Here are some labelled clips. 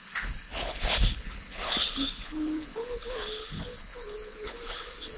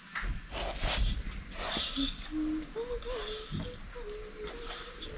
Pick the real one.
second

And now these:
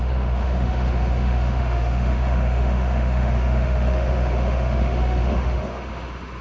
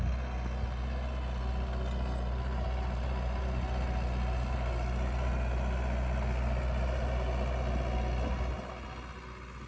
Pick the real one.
second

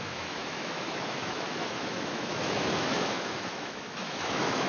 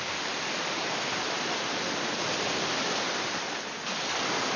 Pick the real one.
second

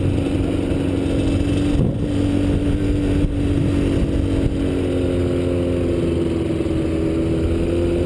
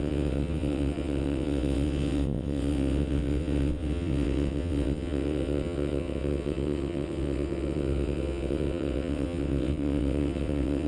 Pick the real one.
first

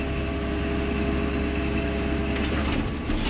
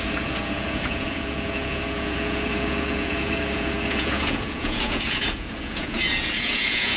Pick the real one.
first